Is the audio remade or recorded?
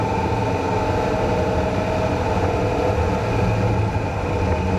recorded